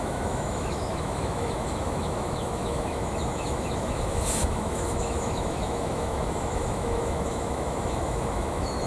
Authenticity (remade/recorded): remade